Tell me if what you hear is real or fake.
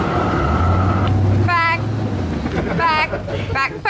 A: real